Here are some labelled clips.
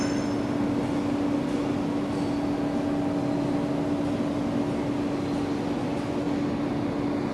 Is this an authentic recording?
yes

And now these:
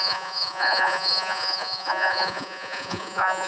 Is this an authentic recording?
no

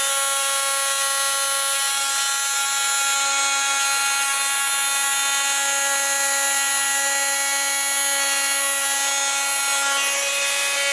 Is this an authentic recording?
yes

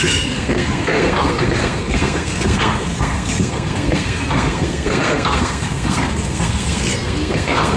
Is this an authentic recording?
no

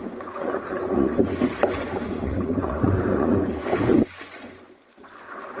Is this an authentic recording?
no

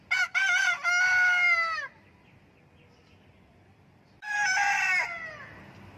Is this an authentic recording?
yes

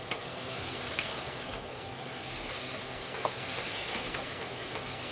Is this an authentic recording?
no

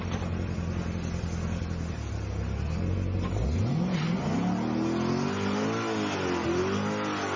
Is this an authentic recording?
yes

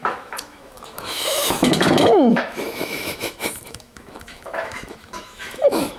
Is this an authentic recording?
no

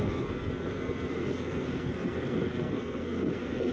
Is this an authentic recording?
no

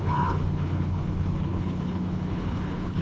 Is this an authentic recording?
no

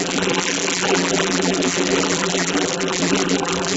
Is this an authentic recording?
no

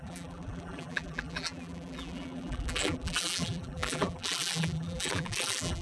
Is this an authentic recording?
no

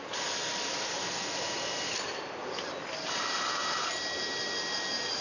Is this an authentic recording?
yes